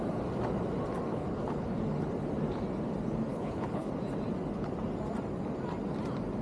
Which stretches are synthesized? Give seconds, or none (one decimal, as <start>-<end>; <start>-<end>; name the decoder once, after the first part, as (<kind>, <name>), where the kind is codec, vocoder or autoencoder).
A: 1.1-1.8 (codec, HILCodec); 3.3-3.9